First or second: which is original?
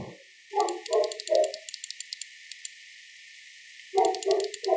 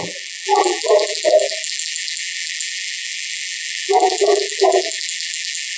first